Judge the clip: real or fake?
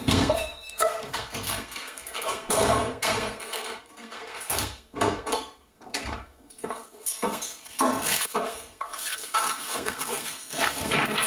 fake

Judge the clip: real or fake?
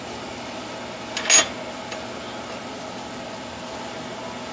real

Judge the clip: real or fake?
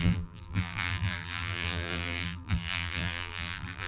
fake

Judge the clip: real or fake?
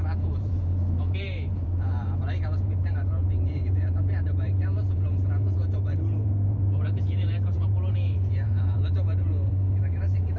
fake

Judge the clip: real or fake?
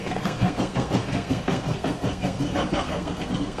fake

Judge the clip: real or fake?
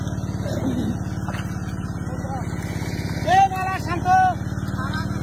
real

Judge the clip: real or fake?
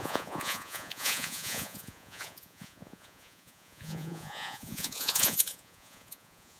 fake